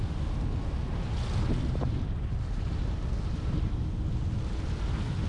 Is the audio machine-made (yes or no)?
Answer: no